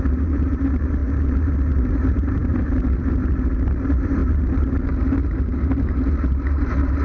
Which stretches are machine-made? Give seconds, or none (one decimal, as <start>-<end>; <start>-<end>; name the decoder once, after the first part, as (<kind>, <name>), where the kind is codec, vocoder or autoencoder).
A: 0.0-7.0 (vocoder, BigVGAN v2)